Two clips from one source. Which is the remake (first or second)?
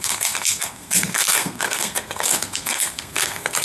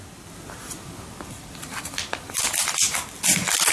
first